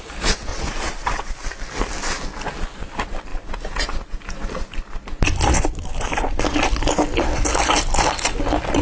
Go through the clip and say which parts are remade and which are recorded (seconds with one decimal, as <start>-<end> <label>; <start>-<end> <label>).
0.0-0.5 recorded; 0.5-1.3 remade; 1.3-8.8 recorded